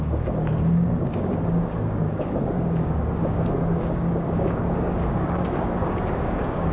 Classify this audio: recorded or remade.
remade